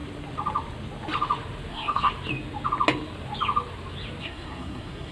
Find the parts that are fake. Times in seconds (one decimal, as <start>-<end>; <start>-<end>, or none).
1.7-2.1; 4.2-5.1